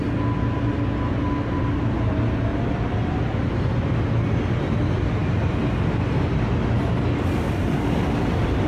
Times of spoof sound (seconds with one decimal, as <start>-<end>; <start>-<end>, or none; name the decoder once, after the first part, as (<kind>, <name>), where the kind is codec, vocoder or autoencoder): 2.5-3.2 (vocoder, BigVGAN v2)